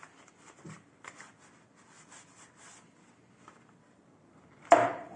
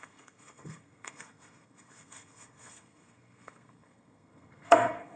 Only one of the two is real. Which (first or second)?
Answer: first